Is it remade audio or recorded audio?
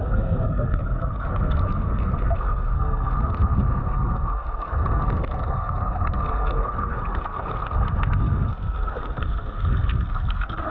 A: remade